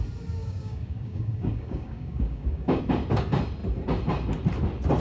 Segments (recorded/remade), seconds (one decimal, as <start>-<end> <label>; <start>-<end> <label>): 0.0-0.4 recorded; 0.4-2.8 remade; 2.8-5.0 recorded